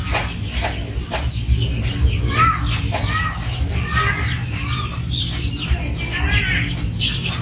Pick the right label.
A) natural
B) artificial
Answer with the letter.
A